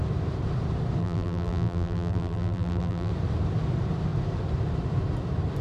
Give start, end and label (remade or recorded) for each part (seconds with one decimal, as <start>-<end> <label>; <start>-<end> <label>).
0.0-1.0 recorded; 1.0-3.1 remade; 3.1-5.6 recorded